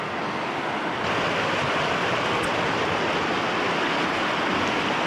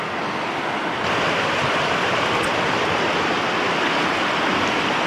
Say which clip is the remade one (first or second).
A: second